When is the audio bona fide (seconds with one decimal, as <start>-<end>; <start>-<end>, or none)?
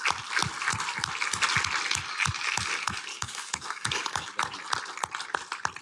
0.0-3.1; 4.3-5.8